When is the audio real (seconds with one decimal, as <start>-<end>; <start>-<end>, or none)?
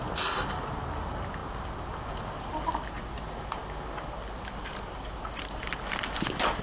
0.0-6.6